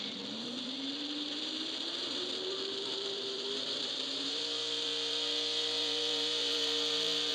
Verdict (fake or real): fake